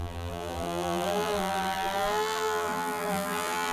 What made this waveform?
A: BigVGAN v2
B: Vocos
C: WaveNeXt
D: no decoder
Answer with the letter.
A